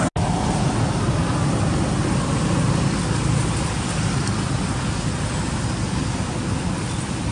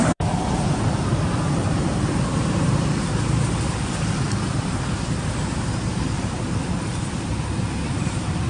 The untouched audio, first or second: first